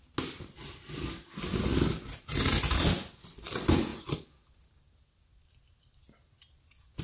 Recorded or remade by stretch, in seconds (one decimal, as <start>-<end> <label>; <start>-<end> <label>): 0.0-7.0 recorded